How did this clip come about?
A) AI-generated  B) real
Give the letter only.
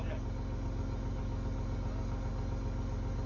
B